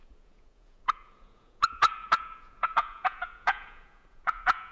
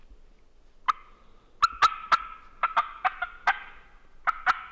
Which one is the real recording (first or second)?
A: second